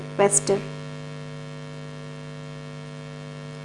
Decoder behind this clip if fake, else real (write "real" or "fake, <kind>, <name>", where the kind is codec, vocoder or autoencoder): real